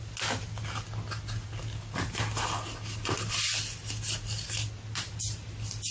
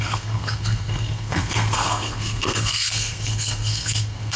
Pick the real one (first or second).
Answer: first